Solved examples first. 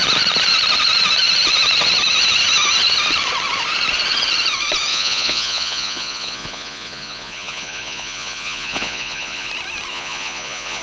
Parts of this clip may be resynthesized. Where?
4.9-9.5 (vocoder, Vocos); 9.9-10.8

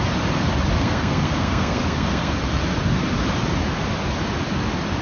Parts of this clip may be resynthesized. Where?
0.8-2.3 (codec, SNAC)

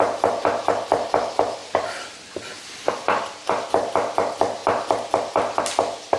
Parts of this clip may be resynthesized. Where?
none

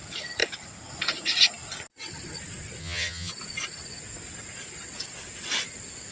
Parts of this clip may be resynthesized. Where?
2.8-3.3 (vocoder, HiFi-GAN)

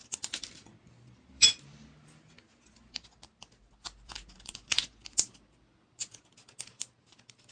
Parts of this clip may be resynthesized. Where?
4.4-5.0 (vocoder, Vocos)

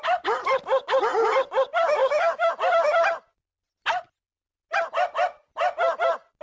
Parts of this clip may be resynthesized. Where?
2.0-2.5 (codec, DAC)